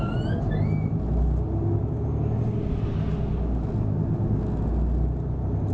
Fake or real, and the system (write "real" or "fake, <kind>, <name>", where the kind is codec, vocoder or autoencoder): real